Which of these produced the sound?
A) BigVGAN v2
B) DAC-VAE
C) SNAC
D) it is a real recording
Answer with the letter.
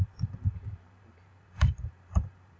A